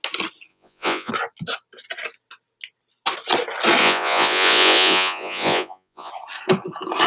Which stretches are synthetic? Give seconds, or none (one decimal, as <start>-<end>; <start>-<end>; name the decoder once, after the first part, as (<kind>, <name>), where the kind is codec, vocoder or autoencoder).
0.5-1.1 (vocoder, Vocos); 3.8-6.1